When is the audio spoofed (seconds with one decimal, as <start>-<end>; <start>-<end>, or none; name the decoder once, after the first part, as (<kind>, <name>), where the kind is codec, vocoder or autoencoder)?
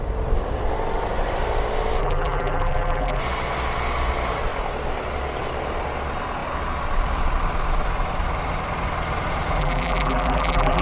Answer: 2.0-3.2 (vocoder, BigVGAN v2); 9.6-10.8